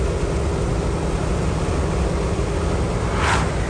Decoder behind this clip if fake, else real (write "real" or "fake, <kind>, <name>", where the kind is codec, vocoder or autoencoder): real